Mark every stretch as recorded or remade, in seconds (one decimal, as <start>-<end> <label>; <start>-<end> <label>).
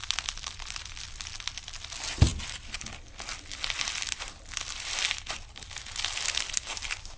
0.0-7.2 recorded